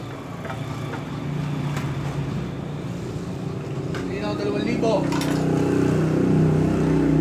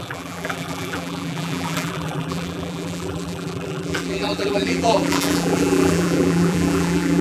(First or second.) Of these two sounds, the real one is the first